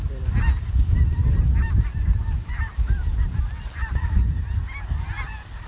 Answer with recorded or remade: recorded